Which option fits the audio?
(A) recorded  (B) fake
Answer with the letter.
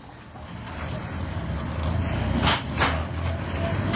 A